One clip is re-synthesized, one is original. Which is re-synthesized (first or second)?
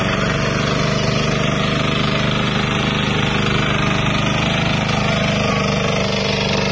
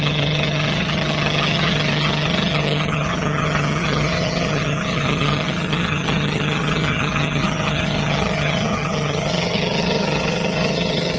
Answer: second